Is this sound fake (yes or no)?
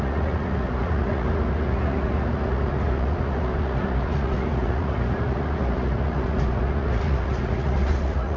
yes